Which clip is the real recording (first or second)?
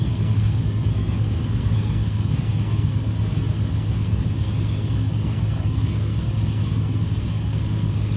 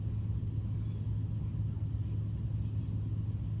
second